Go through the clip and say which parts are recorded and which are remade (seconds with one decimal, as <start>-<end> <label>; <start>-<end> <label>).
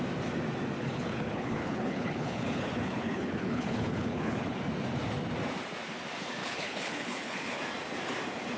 0.0-0.8 recorded; 0.8-4.6 remade; 4.6-6.4 recorded; 6.4-7.6 remade; 7.6-8.6 recorded